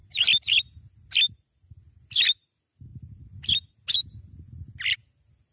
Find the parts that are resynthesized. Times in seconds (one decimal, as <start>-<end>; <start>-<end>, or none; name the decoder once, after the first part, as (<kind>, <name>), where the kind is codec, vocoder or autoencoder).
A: none